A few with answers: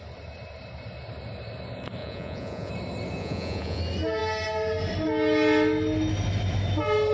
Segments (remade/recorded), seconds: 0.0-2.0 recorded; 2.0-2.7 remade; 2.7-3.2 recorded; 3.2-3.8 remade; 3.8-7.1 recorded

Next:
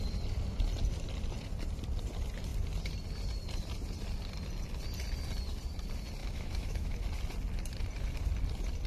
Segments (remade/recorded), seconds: 0.0-6.2 recorded; 6.2-7.0 remade; 7.0-8.9 recorded

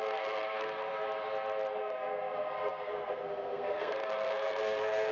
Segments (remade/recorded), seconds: 0.0-0.9 remade; 0.9-1.8 recorded; 1.8-5.1 remade

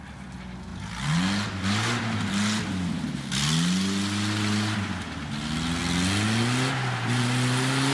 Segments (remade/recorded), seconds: 0.0-7.9 recorded

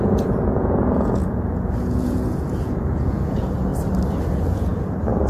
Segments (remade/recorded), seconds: 0.0-3.7 remade; 3.7-4.3 recorded; 4.3-4.7 remade; 4.7-5.3 recorded

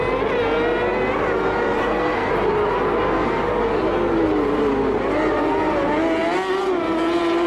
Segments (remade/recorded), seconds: 0.0-1.8 recorded; 1.8-2.3 remade; 2.3-7.5 recorded

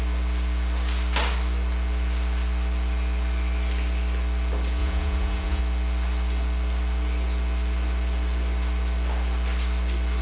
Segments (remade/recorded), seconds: 0.0-4.8 recorded; 4.8-5.6 remade; 5.6-10.2 recorded